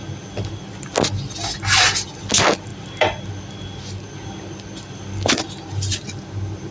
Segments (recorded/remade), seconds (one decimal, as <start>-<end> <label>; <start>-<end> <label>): 0.0-6.7 recorded